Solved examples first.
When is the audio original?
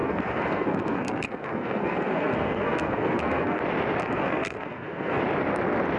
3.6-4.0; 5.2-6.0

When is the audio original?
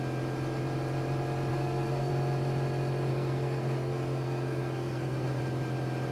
0.0-1.5; 2.1-3.1; 5.4-6.1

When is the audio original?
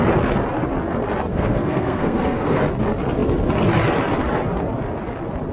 0.0-1.3; 2.6-5.5